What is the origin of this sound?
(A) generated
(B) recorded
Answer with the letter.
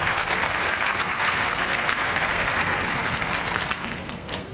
A